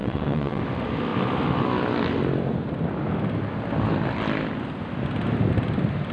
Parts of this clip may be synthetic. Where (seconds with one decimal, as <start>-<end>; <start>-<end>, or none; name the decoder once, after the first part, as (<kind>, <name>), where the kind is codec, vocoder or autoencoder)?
0.0-0.6 (vocoder, WaveNeXt)